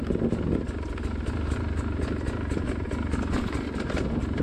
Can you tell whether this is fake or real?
real